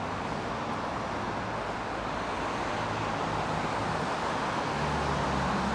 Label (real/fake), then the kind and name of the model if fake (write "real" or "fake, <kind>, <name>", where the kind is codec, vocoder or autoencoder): real